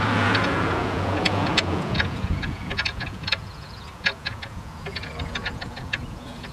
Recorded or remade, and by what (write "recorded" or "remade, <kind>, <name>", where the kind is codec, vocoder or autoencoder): remade, vocoder, Vocos